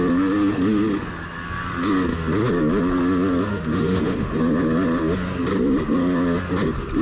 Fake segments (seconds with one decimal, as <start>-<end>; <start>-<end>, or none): 3.5-4.3